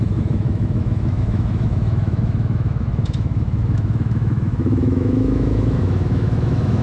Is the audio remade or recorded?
remade